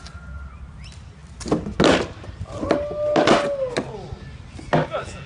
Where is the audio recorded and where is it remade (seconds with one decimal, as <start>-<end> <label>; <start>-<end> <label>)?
0.0-5.3 recorded